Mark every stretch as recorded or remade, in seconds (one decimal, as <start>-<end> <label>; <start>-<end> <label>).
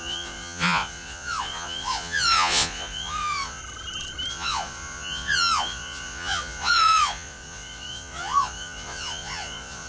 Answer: 0.0-3.6 remade; 3.6-4.3 recorded; 4.3-9.9 remade